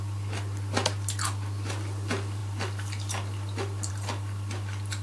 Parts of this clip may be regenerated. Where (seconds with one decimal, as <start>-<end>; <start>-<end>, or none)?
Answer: none